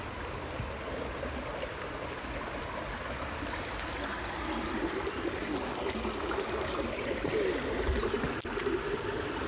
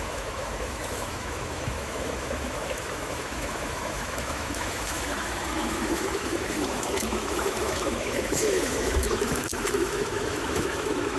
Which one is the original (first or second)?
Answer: first